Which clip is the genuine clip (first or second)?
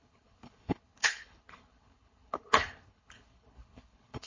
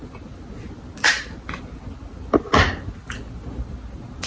second